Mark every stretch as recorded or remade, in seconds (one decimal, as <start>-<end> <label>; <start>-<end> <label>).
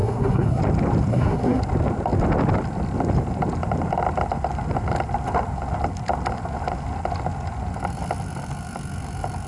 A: 0.0-0.6 remade; 0.6-1.1 recorded; 1.1-1.6 remade; 1.6-9.5 recorded